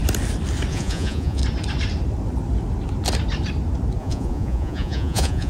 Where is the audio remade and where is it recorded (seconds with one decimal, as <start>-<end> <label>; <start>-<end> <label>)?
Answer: 0.0-0.7 recorded; 0.7-1.4 remade; 1.4-4.0 recorded; 4.0-5.5 remade